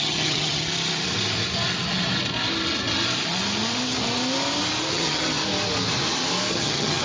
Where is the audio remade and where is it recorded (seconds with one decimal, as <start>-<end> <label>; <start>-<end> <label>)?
0.0-0.7 remade; 0.7-4.9 recorded; 4.9-5.4 remade; 5.4-6.5 recorded; 6.5-7.0 remade